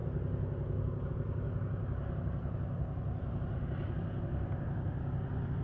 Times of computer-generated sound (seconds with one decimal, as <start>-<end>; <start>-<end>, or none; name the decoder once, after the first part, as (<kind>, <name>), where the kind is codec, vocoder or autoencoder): none